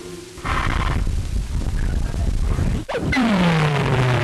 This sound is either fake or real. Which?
fake